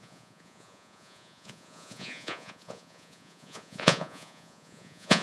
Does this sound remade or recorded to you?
remade